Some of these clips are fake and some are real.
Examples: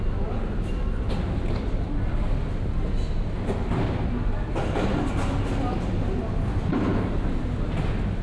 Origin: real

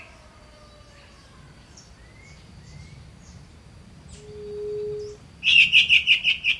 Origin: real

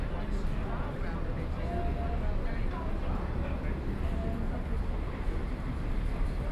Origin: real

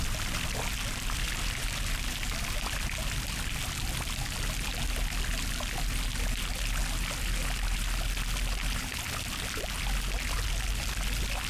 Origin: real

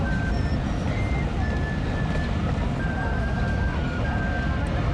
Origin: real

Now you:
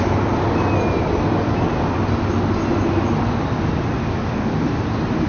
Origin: real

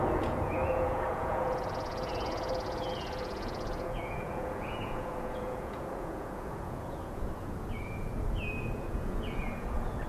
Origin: fake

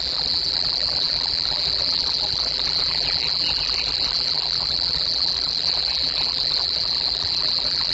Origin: fake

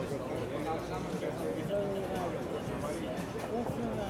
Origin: real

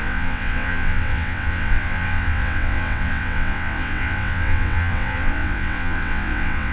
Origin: fake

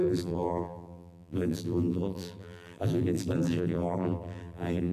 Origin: fake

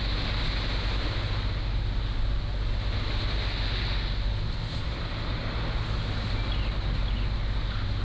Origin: real